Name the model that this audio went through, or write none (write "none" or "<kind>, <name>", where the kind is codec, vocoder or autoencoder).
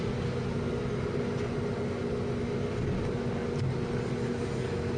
none